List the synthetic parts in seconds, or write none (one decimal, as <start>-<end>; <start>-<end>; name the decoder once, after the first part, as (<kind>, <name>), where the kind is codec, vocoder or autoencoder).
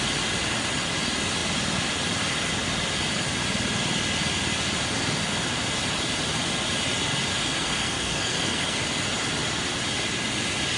7.3-8.8 (codec, SNAC)